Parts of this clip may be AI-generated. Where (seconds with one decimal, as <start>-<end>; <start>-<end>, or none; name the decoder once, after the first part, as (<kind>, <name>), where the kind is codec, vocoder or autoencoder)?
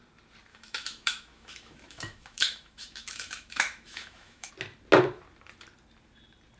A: 0.5-4.5 (autoencoder, DAC-VAE)